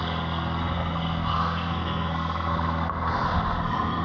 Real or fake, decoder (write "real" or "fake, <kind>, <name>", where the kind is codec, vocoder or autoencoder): fake, codec, SNAC